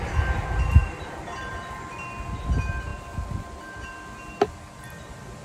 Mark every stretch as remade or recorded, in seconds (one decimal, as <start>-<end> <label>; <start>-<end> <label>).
0.0-0.4 recorded; 0.4-1.5 remade; 1.5-5.4 recorded